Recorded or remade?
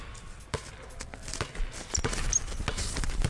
recorded